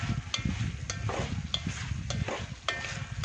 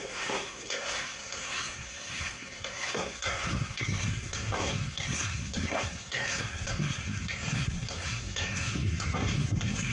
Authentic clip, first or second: first